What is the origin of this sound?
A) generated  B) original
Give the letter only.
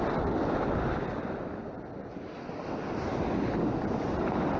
B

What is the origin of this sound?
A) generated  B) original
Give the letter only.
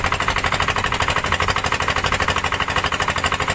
B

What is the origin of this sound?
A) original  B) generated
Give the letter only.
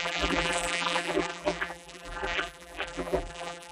B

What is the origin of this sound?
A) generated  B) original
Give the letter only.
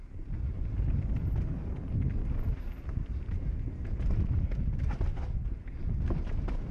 B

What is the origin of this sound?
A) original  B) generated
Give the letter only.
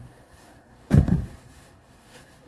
B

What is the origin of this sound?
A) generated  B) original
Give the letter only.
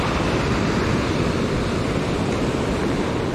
B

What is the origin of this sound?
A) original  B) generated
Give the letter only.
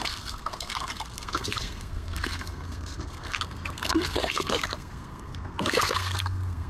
B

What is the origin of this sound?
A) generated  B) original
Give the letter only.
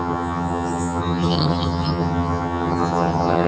A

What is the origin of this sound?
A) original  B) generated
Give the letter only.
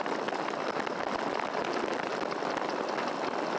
A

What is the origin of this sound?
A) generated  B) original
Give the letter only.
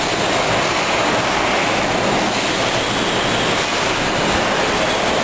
B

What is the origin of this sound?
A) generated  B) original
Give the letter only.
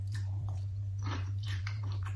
A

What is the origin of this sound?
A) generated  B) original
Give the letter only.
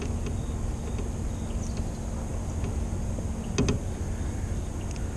B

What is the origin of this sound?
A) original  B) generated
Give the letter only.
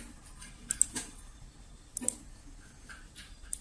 A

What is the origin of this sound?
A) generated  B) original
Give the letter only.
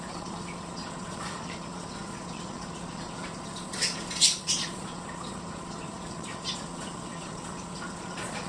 A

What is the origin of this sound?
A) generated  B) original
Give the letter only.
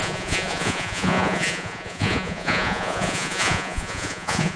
A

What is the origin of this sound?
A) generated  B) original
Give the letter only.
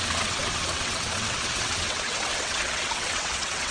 A